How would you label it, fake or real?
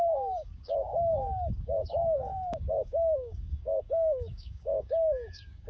fake